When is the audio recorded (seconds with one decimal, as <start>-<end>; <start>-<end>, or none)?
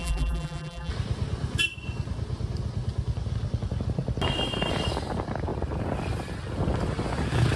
0.9-7.6